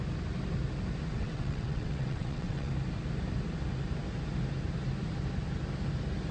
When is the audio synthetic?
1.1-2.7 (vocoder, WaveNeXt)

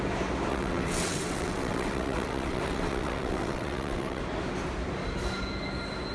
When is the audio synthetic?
0.5-4.2 (vocoder, WaveNeXt)

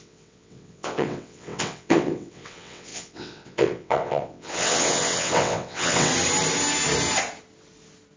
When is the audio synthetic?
0.0-6.1 (vocoder, WaveNeXt)